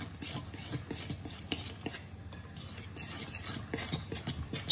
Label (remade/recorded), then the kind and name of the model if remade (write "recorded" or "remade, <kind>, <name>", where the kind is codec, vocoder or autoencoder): recorded